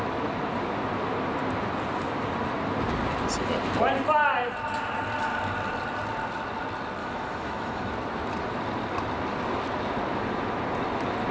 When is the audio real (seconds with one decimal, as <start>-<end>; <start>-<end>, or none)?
0.0-7.0; 7.9-11.3